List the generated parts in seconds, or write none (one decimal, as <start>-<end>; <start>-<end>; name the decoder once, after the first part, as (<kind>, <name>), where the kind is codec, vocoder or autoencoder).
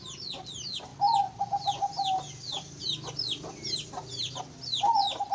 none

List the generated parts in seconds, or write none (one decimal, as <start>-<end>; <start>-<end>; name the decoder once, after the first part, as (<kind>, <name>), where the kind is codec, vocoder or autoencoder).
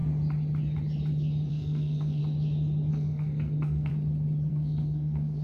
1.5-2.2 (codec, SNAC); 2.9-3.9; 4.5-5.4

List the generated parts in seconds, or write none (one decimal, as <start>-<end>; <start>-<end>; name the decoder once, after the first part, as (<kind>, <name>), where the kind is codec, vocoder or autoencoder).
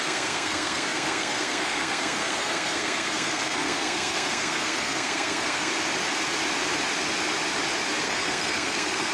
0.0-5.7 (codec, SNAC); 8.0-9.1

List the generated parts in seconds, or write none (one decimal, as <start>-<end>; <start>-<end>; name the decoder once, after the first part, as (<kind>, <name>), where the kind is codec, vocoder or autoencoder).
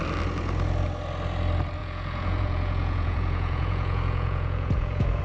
1.8-5.2 (vocoder, Vocos)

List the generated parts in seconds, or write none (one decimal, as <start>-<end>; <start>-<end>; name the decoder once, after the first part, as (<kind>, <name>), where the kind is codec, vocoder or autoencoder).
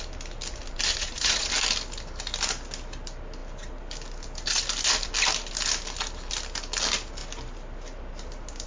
0.9-1.5 (vocoder, Vocos)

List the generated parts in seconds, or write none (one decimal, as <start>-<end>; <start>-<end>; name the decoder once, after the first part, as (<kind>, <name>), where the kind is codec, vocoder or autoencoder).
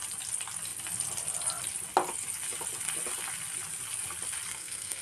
4.5-5.0 (codec, SNAC)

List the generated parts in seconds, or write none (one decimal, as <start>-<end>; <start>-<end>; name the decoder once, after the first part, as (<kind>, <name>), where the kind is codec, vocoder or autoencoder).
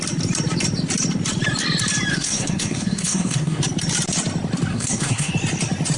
2.1-3.6 (codec, SNAC); 4.7-5.3